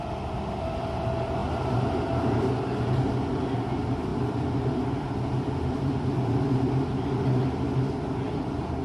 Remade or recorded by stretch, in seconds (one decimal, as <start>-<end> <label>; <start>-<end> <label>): 0.0-4.1 recorded; 4.1-7.4 remade; 7.4-8.8 recorded